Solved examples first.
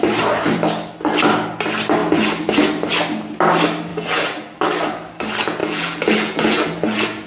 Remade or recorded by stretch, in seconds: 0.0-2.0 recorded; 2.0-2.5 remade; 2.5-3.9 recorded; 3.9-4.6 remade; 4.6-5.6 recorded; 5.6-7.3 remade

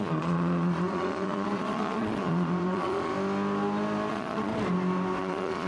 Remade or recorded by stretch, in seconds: 0.0-3.1 remade; 3.1-4.1 recorded; 4.1-4.5 remade; 4.5-5.2 recorded; 5.2-5.7 remade

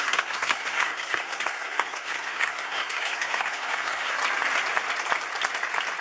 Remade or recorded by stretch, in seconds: 0.0-4.2 remade; 4.2-6.0 recorded

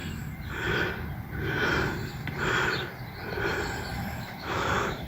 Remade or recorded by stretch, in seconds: 0.0-3.9 recorded; 3.9-5.1 remade

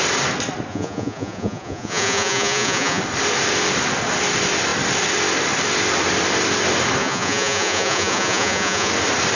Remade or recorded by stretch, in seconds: 0.0-0.7 recorded; 0.7-3.0 remade; 3.0-7.0 recorded; 7.0-8.9 remade; 8.9-9.3 recorded